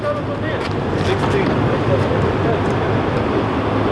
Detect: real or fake real